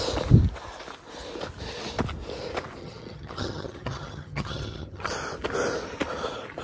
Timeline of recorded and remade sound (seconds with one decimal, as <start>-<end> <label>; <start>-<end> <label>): 0.0-2.8 recorded; 2.8-5.1 remade; 5.1-6.6 recorded